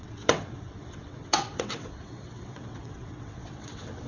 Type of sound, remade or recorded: remade